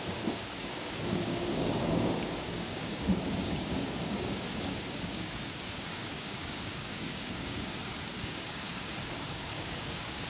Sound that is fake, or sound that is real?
fake